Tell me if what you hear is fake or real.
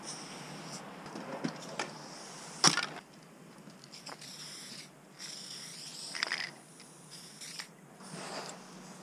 real